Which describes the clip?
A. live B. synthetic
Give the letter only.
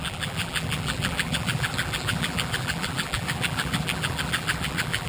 B